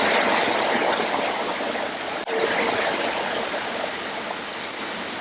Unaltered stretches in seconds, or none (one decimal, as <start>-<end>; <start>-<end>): 0.0-5.2